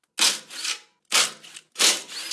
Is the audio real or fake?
real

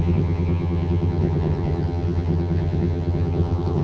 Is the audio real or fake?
fake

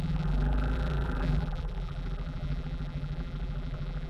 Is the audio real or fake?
fake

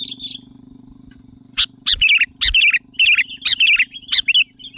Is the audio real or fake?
real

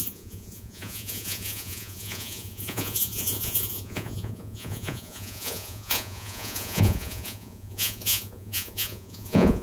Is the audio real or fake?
fake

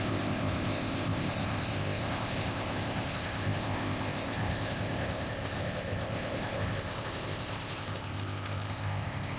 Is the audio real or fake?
fake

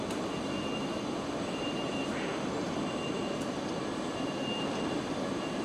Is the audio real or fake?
fake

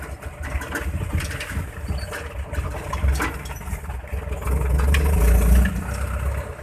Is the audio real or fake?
real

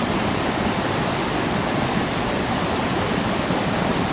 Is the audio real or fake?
real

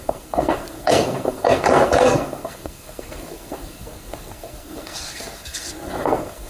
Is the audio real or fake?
fake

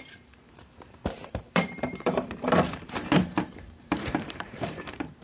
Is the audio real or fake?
fake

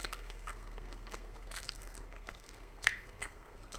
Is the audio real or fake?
fake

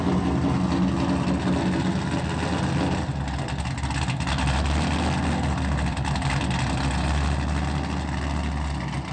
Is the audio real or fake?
real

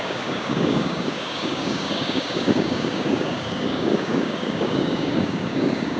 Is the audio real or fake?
fake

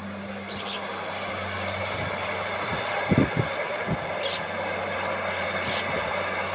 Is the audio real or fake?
real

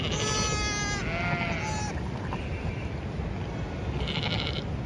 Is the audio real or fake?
real